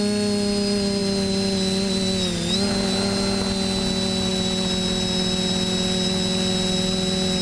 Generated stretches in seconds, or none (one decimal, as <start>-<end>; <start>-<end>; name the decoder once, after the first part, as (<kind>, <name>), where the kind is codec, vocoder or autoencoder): none